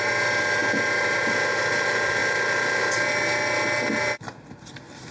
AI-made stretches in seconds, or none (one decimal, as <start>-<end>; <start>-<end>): none